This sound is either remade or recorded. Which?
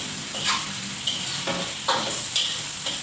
recorded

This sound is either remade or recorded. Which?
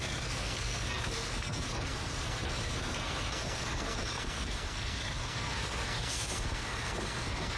remade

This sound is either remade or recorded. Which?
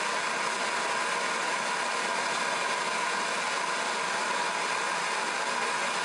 recorded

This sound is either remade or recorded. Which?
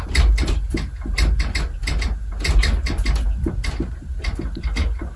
recorded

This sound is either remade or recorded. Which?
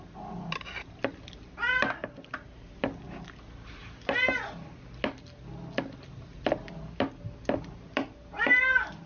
recorded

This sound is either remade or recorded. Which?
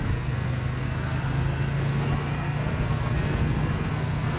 remade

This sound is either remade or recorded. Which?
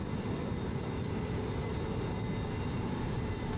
recorded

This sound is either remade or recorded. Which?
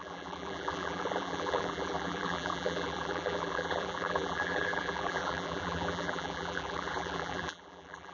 remade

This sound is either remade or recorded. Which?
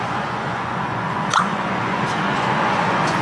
remade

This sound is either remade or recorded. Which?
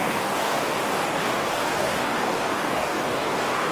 remade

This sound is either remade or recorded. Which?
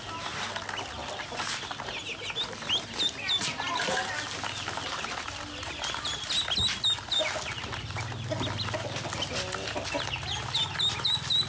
recorded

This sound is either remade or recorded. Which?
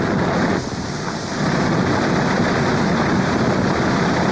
recorded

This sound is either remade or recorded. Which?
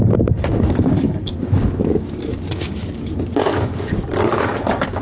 remade